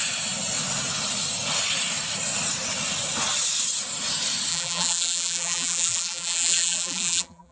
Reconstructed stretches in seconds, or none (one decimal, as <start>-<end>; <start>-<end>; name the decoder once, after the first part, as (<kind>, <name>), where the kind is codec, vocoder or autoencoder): 4.5-7.5 (vocoder, BigVGAN v2)